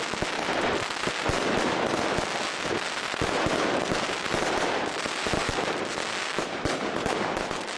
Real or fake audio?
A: real